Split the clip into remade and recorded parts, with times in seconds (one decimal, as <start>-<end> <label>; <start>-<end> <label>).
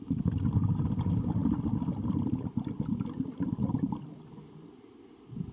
0.0-5.5 recorded